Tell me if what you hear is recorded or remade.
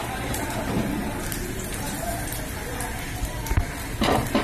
remade